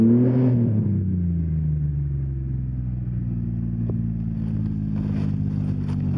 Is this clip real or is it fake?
real